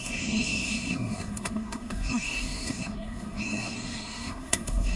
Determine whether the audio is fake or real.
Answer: fake